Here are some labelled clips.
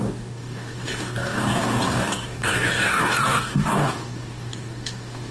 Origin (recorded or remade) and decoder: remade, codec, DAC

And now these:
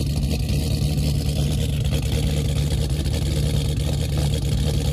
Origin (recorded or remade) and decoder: recorded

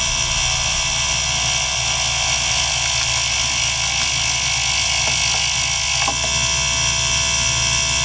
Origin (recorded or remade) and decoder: recorded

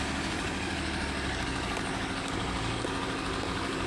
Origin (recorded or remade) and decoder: remade, codec, DAC